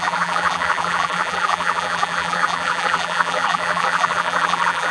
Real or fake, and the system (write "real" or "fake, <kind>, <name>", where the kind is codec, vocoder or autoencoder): fake, vocoder, BigVGAN v2